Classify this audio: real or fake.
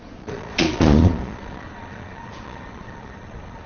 fake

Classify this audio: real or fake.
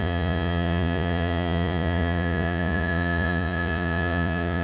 fake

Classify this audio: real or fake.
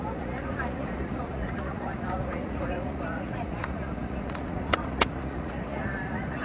fake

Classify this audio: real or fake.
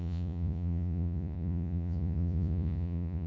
fake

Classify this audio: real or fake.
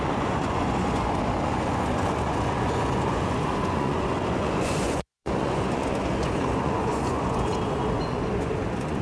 fake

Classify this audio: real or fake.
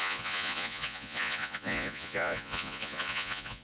fake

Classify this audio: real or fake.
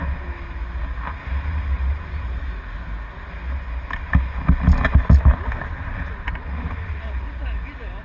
real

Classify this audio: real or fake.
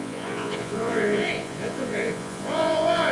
fake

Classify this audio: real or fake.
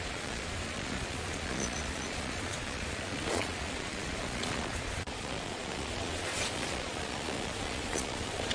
fake